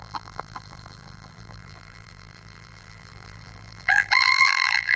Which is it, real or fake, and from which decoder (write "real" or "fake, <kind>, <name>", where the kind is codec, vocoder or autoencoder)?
fake, vocoder, BigVGAN v2